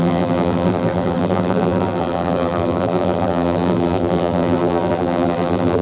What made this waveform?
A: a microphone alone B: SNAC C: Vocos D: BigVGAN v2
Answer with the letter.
D